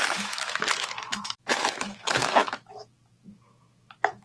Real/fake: fake